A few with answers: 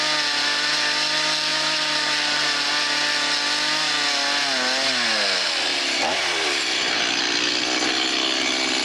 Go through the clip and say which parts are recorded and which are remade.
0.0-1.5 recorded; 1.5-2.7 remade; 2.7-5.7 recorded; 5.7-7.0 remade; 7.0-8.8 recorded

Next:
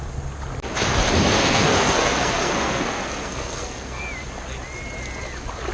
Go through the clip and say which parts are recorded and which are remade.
0.0-1.4 recorded; 1.4-4.0 remade; 4.0-5.7 recorded

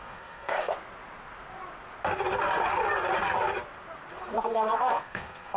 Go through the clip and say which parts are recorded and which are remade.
0.0-0.7 remade; 0.7-4.1 recorded; 4.1-5.6 remade

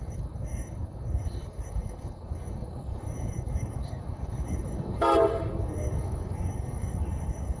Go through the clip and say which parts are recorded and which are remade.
0.0-7.6 remade

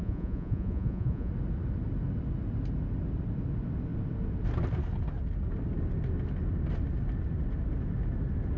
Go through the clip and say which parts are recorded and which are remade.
0.0-1.3 remade; 1.3-8.6 recorded

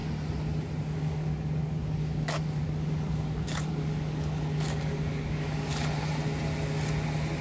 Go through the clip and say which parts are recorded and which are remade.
0.0-0.8 recorded; 0.8-5.7 remade; 5.7-7.4 recorded

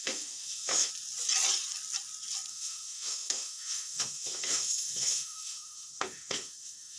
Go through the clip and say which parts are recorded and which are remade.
0.0-0.9 remade; 0.9-2.5 recorded; 2.5-7.0 remade